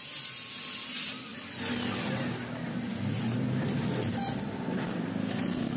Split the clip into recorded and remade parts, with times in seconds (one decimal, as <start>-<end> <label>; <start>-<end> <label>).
0.0-5.8 recorded